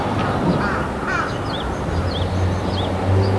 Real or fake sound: real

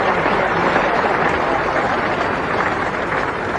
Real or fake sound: fake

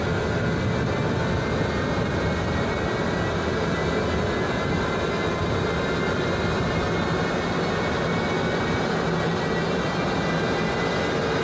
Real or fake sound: real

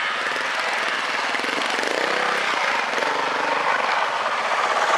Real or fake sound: real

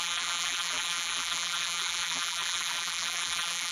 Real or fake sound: fake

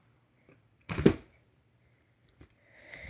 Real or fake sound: fake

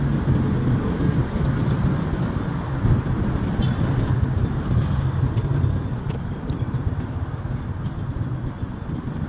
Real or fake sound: fake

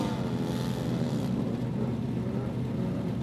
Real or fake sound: fake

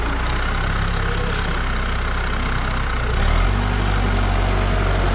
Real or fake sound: real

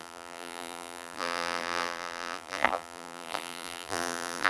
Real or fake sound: fake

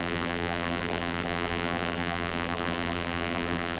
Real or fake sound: fake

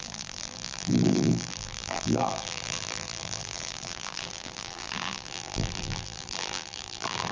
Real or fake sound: fake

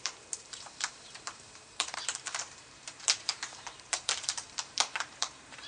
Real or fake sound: fake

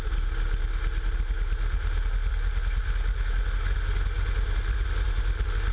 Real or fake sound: real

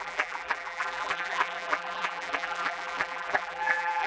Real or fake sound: fake